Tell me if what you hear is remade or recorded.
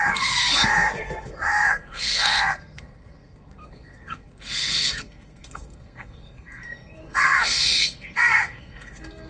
remade